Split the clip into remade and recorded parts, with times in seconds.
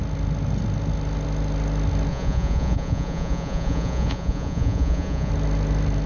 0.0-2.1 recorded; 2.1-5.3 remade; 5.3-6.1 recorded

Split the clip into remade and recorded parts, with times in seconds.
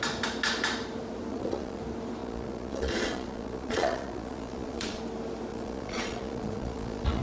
0.0-1.3 recorded; 1.3-1.8 remade; 1.8-2.2 recorded; 2.2-5.0 remade; 5.0-5.5 recorded; 5.5-7.2 remade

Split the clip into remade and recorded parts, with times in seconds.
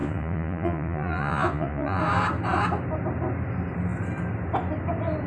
0.0-2.0 remade; 2.0-5.3 recorded